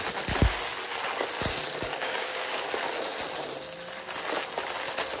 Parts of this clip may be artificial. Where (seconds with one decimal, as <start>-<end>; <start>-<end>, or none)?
1.9-2.6